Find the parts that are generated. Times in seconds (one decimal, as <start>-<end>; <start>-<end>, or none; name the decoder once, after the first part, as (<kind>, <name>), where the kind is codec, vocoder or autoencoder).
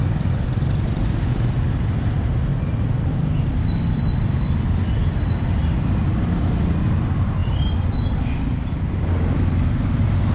none